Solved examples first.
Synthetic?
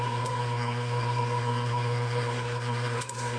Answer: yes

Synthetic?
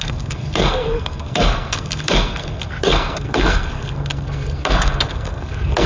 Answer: yes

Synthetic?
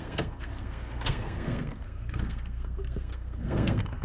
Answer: yes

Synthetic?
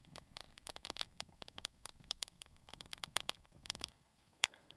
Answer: yes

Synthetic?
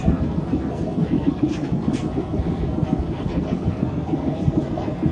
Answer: yes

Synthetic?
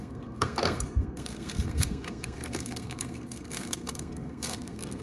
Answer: yes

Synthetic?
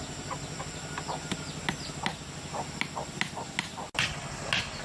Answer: no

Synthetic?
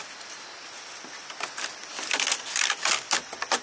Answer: no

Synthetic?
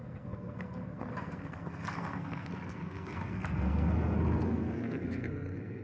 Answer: yes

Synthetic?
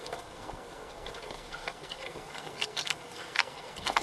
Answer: yes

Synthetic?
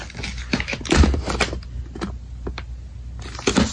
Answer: no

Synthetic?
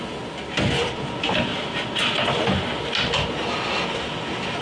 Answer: no